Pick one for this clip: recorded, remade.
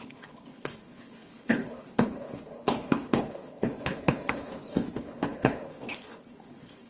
remade